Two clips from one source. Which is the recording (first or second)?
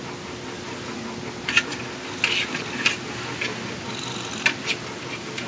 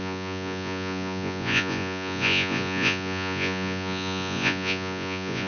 first